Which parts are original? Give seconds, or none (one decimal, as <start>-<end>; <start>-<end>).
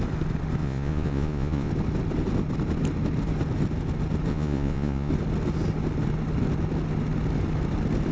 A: 0.0-0.6; 1.7-4.3; 5.1-8.1